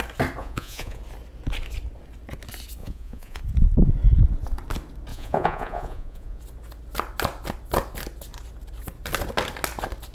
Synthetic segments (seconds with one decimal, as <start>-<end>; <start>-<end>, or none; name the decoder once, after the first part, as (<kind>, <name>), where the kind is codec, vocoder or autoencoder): 0.4-1.0 (vocoder, Vocos); 2.8-3.4; 5.1-6.4